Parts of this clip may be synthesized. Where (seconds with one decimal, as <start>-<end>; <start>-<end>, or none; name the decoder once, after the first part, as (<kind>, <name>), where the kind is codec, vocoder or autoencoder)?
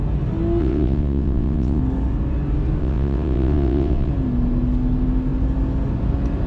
0.6-1.8 (vocoder, WaveNeXt); 2.8-4.1